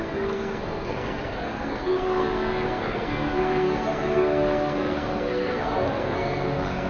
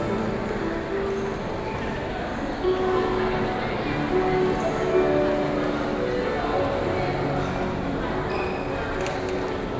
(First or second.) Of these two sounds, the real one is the second